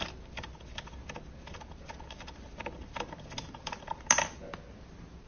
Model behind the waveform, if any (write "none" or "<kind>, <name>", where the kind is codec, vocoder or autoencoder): none